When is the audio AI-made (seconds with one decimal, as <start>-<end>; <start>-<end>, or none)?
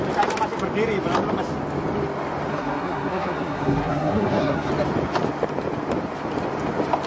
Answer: 2.5-4.7